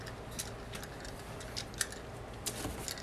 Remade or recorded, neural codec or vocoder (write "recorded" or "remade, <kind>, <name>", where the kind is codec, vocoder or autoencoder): recorded